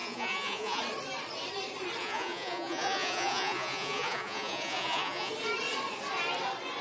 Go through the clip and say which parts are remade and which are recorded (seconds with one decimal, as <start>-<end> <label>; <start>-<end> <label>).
0.0-0.8 remade; 0.8-2.0 recorded; 2.0-5.3 remade; 5.3-6.8 recorded